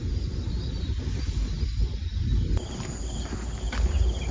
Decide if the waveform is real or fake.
real